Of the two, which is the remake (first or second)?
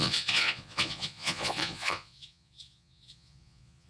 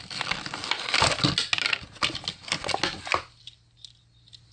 first